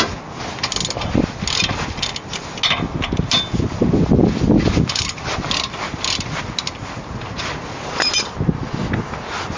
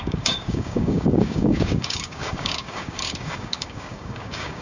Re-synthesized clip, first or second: second